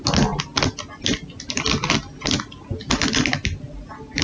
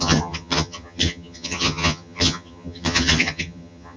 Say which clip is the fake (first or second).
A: second